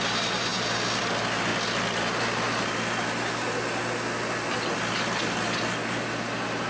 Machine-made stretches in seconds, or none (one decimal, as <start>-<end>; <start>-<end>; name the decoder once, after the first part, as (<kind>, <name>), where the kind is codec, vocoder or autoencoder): none